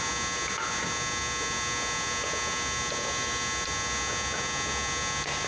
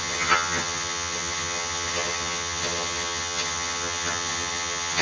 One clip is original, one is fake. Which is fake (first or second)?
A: second